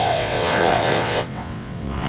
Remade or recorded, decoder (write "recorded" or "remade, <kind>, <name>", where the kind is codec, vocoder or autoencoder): remade, vocoder, WaveNeXt